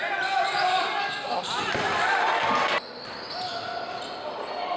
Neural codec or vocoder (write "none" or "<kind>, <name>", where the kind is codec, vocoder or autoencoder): none